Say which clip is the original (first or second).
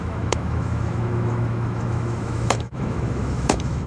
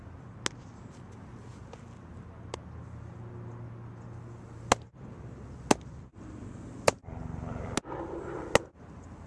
second